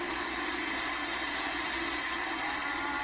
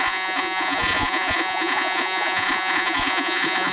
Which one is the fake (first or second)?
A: second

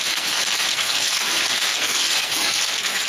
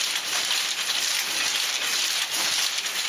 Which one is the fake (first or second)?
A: first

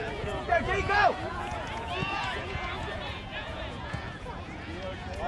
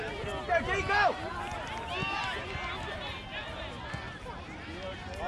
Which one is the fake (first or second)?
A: first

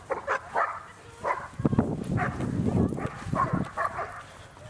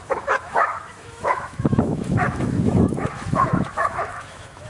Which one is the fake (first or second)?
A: second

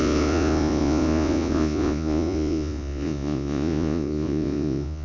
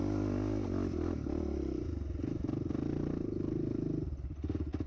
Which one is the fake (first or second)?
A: first